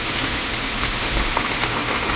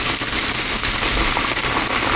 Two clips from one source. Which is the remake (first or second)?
first